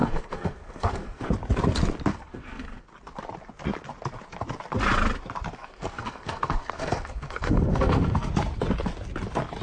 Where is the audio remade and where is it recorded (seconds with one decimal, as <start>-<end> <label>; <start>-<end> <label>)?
0.0-1.3 remade; 1.3-2.1 recorded; 2.1-2.9 remade; 2.9-5.6 recorded; 5.6-8.3 remade; 8.3-9.6 recorded